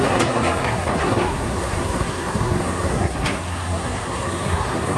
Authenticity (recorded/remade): remade